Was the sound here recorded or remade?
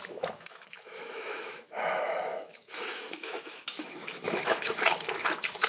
remade